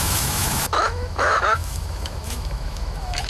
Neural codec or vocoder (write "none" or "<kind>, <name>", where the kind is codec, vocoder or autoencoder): autoencoder, DAC-VAE